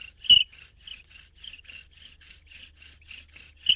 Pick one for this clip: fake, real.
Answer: real